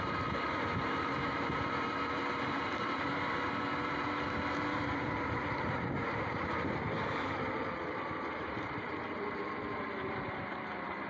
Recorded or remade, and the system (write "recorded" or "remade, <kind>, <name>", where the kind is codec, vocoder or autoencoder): remade, vocoder, BigVGAN v2